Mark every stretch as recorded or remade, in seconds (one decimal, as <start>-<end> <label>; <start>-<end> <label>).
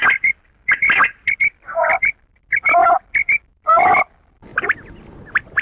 0.0-5.6 recorded